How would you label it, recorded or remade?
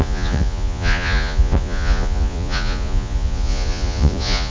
remade